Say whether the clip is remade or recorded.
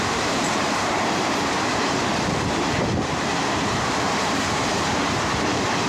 remade